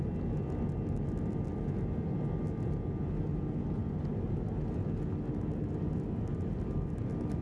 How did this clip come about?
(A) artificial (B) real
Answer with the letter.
B